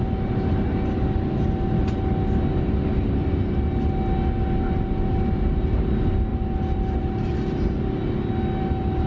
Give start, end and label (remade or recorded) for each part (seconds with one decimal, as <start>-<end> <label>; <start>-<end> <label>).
0.0-9.1 recorded

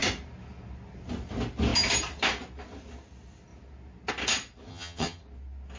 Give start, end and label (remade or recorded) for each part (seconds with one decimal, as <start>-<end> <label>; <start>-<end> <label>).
0.0-4.7 recorded; 4.7-5.2 remade; 5.2-5.8 recorded

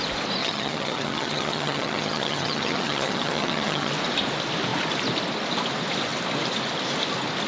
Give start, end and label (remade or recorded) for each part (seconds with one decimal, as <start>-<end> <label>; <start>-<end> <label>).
0.0-0.4 recorded; 0.4-3.9 remade; 3.9-7.5 recorded

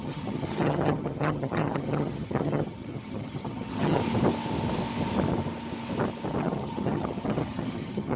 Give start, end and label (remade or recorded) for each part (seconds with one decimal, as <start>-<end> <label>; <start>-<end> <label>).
0.0-4.0 remade; 4.0-6.4 recorded; 6.4-8.2 remade

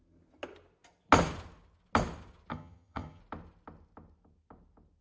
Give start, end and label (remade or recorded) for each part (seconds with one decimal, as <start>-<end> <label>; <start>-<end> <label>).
0.0-2.5 recorded; 2.5-3.2 remade; 3.2-5.0 recorded

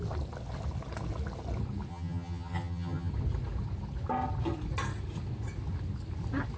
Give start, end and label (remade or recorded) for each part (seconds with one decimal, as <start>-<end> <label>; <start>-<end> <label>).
0.0-1.9 recorded; 1.9-3.1 remade; 3.1-6.6 recorded

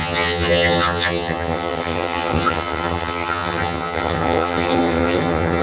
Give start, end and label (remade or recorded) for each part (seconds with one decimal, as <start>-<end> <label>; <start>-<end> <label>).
0.0-5.6 remade

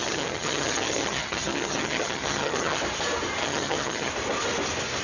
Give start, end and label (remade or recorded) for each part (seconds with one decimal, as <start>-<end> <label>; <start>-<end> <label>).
0.0-2.8 remade; 2.8-3.4 recorded; 3.4-4.1 remade; 4.1-5.0 recorded